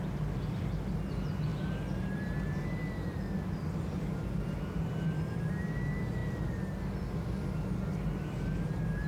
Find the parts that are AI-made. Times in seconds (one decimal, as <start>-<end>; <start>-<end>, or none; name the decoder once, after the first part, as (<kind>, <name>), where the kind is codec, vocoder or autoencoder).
none